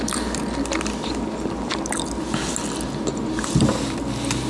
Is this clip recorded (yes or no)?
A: yes